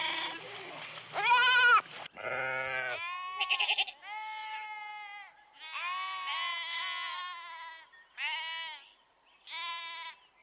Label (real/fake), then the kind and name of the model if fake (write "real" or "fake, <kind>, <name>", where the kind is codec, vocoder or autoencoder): real